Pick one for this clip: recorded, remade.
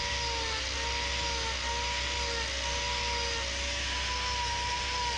recorded